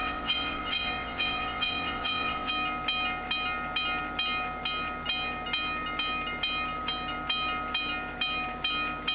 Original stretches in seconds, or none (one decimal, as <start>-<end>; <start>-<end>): 2.5-9.1